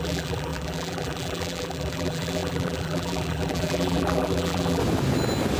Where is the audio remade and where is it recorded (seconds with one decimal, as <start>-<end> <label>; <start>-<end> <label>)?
0.0-4.8 remade; 4.8-5.6 recorded